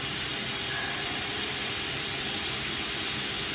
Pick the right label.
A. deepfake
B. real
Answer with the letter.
B